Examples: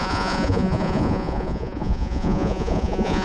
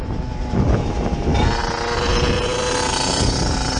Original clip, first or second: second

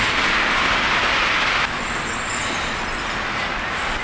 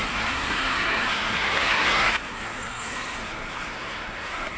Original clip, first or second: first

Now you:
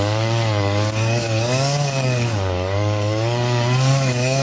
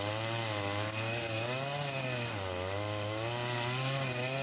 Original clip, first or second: second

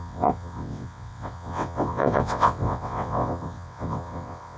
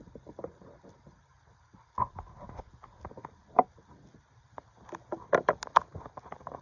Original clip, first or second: second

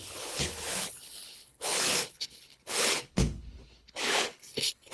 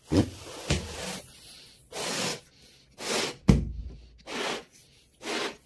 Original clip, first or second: second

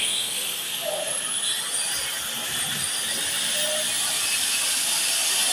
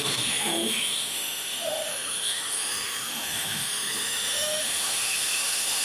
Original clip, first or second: first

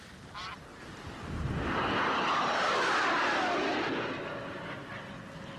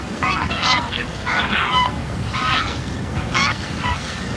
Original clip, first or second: first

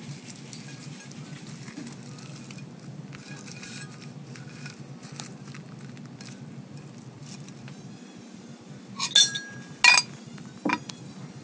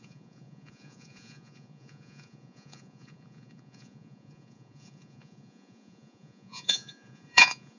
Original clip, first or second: first